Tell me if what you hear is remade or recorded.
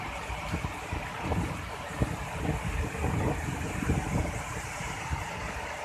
remade